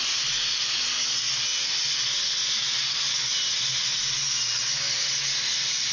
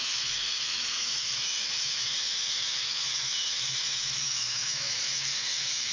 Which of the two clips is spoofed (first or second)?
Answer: second